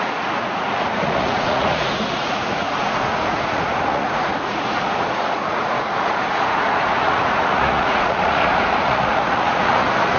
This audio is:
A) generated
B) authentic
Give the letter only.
A